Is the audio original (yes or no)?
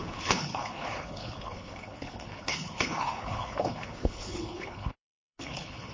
no